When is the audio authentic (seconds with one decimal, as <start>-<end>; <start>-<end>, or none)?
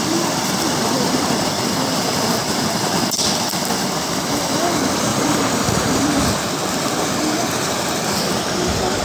none